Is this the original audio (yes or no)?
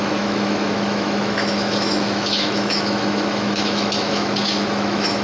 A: no